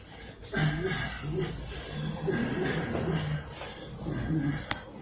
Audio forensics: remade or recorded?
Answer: recorded